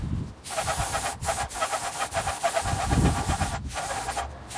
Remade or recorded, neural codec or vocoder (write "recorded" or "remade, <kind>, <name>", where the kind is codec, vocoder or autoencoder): recorded